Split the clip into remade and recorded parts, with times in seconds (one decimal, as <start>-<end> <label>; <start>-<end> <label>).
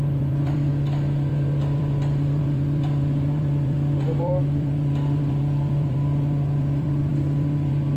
0.0-0.7 remade; 0.7-1.3 recorded; 1.3-8.0 remade